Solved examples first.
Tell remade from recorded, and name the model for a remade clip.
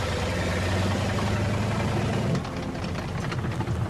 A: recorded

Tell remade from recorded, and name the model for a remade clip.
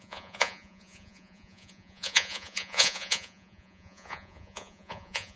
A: remade, vocoder, Vocos